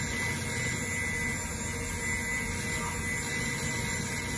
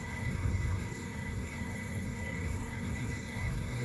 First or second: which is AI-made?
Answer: second